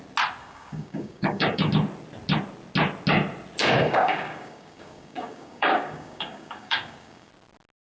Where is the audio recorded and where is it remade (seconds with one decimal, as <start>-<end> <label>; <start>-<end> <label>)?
0.0-0.4 recorded; 0.4-1.7 remade; 1.7-3.8 recorded; 3.8-7.3 remade; 7.3-8.0 recorded